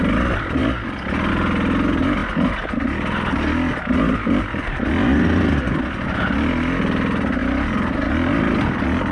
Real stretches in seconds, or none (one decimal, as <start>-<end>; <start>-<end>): 0.0-9.1